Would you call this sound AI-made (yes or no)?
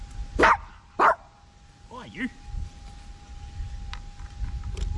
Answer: no